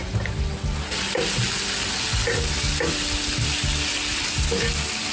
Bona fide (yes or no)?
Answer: yes